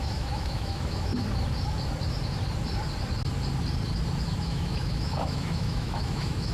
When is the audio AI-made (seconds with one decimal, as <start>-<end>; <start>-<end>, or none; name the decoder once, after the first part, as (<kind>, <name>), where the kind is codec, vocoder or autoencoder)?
0.0-1.1 (autoencoder, DAC-VAE); 4.4-6.5